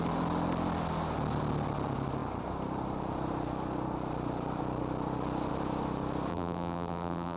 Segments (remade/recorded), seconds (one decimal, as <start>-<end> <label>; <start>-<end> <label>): 0.0-6.3 recorded; 6.3-7.4 remade